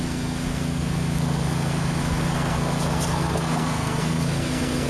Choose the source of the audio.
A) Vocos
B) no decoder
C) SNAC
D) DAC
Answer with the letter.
C